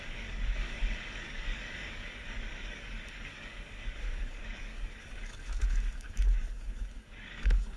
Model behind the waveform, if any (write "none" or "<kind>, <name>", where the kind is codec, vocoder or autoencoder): codec, DAC